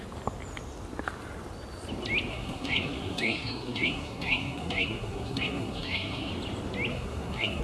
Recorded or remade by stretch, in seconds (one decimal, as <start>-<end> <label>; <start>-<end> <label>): 0.0-2.3 recorded; 2.3-6.3 remade; 6.3-6.9 recorded; 6.9-7.6 remade